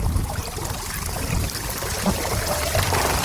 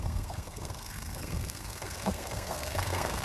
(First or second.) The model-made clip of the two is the second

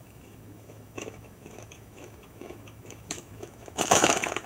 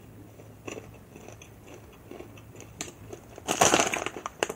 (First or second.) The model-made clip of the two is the first